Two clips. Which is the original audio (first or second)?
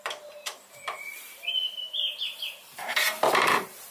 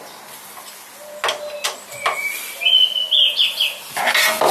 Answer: second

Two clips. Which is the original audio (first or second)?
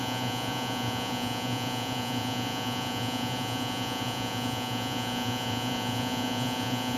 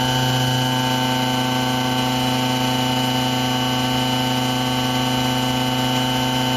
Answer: second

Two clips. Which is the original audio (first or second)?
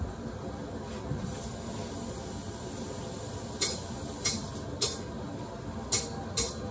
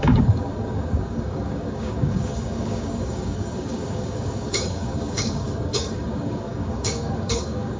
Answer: first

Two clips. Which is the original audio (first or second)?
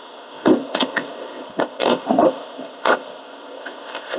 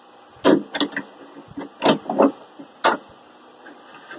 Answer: second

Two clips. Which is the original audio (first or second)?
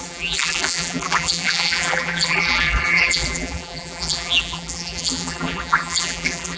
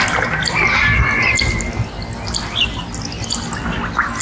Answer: second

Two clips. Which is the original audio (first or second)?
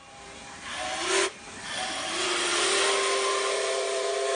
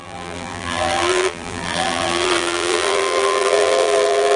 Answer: first